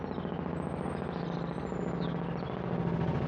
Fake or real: real